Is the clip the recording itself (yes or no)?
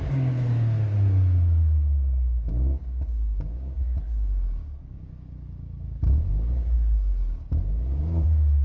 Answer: no